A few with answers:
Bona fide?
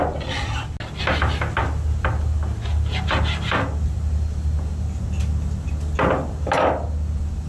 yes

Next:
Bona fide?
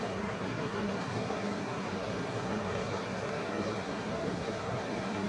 no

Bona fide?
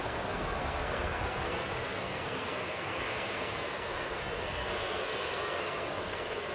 no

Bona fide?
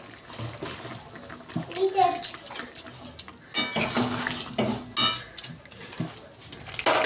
yes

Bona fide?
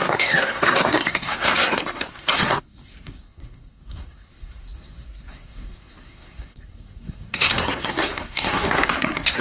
no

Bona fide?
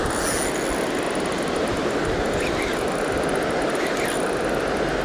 yes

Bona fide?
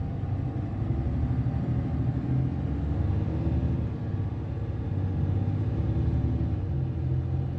yes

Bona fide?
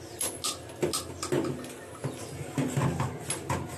yes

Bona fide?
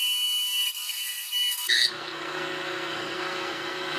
no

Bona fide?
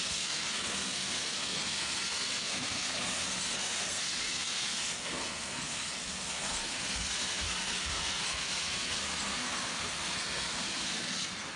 no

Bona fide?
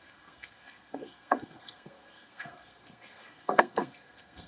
no